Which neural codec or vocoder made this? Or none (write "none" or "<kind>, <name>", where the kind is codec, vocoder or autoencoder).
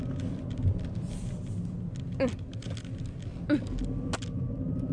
none